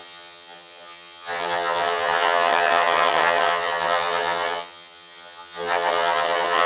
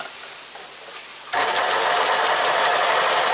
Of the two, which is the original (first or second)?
second